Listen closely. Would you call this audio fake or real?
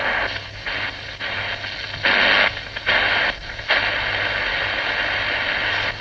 real